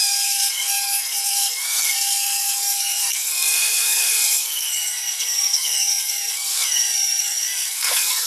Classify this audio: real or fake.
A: fake